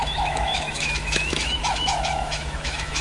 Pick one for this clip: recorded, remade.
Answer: remade